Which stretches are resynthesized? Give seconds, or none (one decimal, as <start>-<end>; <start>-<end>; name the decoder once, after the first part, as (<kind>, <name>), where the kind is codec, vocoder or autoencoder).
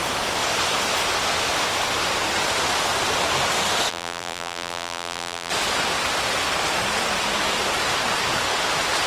3.9-5.5 (vocoder, BigVGAN v2)